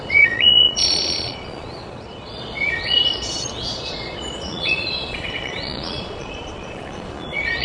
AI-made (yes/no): yes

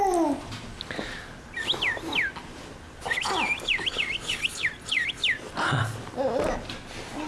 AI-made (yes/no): no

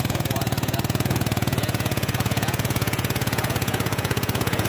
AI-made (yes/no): yes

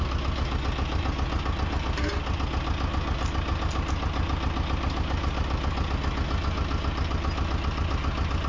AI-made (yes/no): no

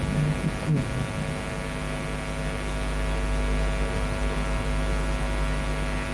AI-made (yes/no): no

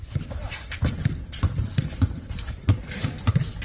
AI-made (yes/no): no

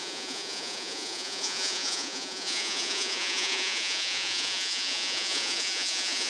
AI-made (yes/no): yes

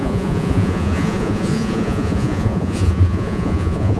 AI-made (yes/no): yes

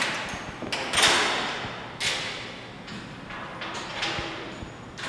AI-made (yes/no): no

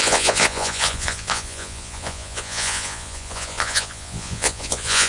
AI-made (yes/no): yes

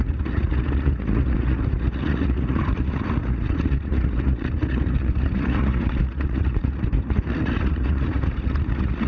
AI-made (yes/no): yes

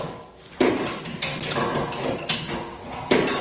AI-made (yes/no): no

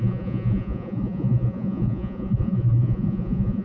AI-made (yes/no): yes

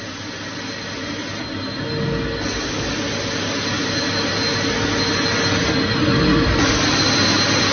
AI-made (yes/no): no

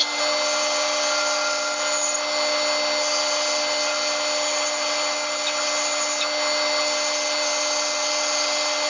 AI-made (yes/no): no